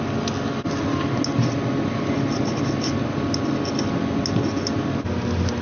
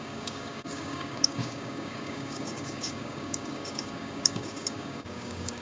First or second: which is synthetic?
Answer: second